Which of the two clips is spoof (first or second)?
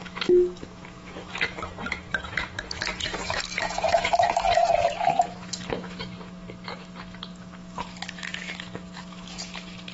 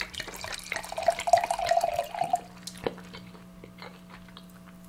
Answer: first